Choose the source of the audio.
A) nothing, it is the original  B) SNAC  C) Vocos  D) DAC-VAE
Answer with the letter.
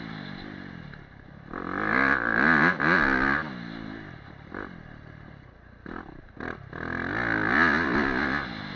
A